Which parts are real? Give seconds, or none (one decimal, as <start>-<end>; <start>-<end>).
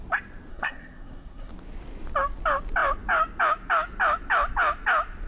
0.0-0.5; 1.5-5.3